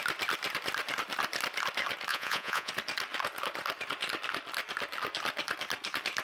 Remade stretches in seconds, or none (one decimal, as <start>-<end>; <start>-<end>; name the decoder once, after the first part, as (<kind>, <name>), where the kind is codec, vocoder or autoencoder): 2.1-2.7 (vocoder, Vocos)